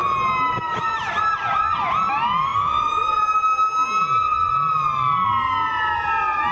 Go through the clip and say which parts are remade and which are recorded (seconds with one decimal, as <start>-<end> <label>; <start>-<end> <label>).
0.0-6.5 recorded